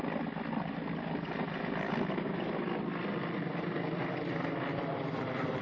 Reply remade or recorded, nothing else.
recorded